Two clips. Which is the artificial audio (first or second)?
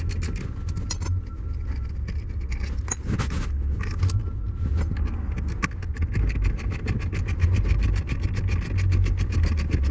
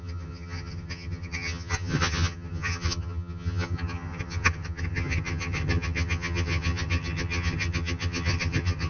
second